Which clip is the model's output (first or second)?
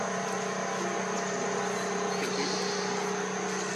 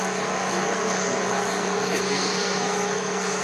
second